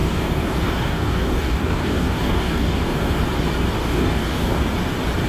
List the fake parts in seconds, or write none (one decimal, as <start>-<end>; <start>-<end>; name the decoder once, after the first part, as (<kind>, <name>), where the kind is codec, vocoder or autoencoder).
0.0-3.2 (codec, DAC); 3.8-4.6